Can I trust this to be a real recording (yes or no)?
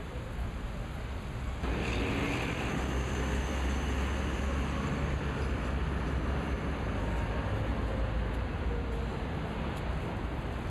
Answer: yes